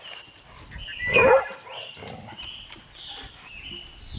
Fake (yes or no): no